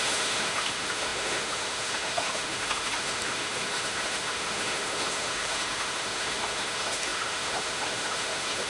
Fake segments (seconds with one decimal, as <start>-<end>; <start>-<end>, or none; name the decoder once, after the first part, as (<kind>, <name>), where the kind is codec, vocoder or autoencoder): 0.0-8.7 (autoencoder, DAC-VAE)